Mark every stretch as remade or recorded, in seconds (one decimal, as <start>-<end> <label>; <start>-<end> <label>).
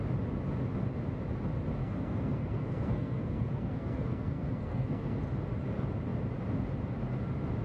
0.0-1.8 recorded; 1.8-5.2 remade; 5.2-7.6 recorded